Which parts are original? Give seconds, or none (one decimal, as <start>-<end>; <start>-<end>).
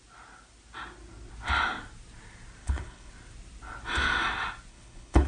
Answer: 0.0-2.6; 3.1-4.7